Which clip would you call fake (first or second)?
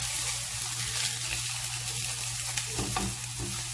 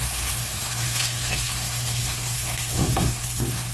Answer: second